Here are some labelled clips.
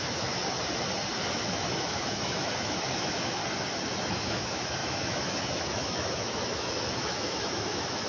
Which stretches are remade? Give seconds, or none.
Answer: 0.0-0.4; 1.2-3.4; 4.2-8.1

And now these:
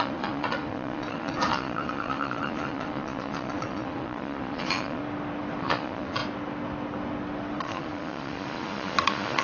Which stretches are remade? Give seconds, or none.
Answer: 0.0-5.0; 5.6-6.2; 7.6-9.4

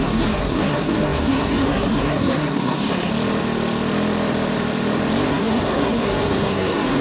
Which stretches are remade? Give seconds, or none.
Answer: 0.0-3.1; 5.3-7.0

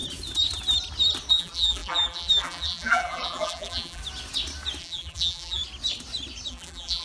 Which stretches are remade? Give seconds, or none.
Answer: 1.3-4.0; 4.8-5.6; 6.5-7.0

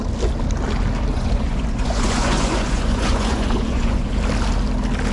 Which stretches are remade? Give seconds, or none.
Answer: 1.1-4.2

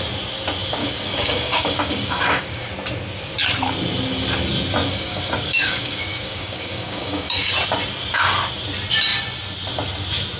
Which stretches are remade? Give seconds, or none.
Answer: 0.8-2.7; 4.8-7.5

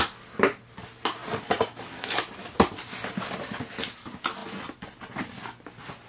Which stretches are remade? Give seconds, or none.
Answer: none